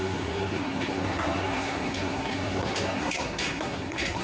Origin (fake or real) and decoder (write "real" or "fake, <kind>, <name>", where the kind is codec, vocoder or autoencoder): fake, codec, SNAC